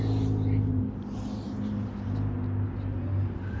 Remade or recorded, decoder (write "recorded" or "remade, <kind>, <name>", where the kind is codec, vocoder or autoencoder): recorded